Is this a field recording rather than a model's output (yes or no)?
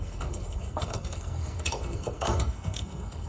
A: no